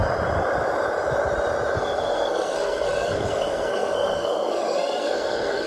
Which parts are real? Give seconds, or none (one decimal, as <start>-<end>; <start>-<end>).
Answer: 0.0-1.8